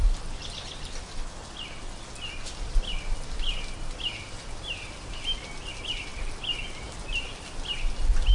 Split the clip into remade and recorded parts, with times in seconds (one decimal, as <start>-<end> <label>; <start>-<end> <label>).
0.0-8.3 recorded